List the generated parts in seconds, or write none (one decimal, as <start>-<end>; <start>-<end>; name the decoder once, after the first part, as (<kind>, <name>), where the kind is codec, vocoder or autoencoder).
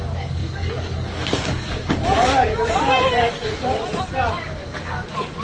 0.0-3.7 (codec, DAC); 4.3-5.4